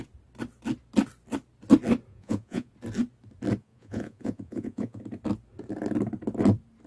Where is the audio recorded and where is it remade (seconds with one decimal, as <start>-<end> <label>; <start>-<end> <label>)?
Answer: 0.0-2.1 recorded; 2.1-2.7 remade; 2.7-3.6 recorded; 3.6-5.0 remade; 5.0-6.9 recorded